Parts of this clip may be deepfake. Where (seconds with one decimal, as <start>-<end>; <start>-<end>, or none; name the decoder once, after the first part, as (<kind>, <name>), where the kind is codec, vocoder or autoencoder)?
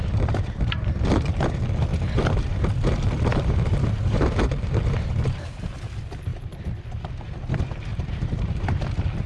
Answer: 1.9-5.7 (vocoder, BigVGAN v2); 7.9-8.8